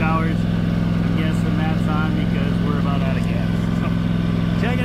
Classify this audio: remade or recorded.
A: recorded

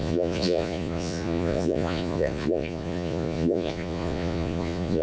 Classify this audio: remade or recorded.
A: remade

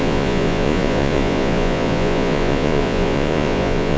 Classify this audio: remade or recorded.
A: remade